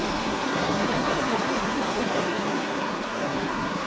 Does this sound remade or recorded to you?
remade